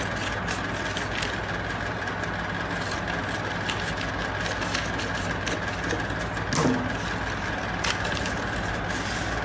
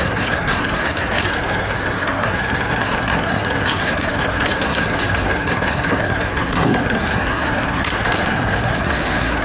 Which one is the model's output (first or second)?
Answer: second